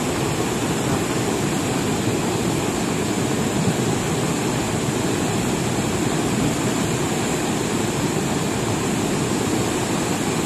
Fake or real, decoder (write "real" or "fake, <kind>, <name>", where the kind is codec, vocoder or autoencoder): real